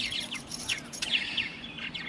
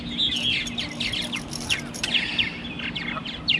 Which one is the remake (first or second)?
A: first